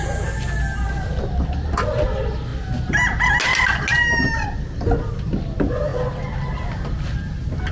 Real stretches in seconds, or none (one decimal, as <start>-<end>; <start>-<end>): 0.0-7.7